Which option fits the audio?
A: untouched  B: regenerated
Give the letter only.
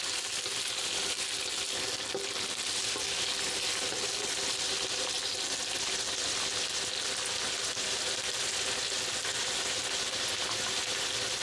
A